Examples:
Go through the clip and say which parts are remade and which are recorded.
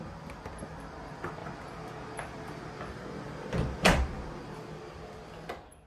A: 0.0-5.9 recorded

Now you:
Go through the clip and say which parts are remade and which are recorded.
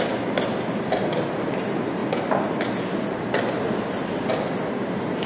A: 0.0-5.3 recorded